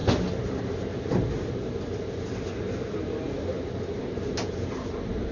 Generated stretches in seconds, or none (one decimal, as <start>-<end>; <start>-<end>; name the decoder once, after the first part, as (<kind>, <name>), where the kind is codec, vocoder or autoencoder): none